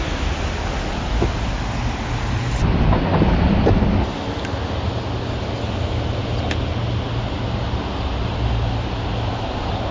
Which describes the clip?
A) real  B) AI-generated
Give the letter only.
A